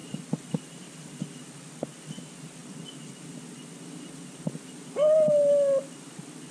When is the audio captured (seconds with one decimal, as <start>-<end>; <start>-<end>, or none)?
0.0-2.6; 3.2-6.5